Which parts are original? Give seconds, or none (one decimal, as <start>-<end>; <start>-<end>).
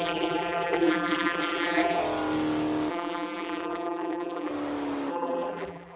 2.0-2.9; 4.5-5.1